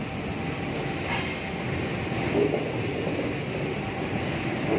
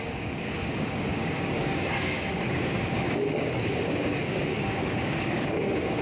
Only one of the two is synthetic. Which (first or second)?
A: second